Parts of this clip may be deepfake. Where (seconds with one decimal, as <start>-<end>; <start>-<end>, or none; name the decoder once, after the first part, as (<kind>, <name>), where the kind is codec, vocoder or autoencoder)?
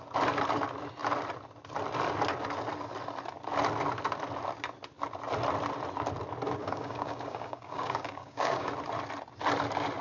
6.6-8.7 (codec, DAC)